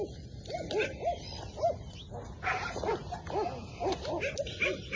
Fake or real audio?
real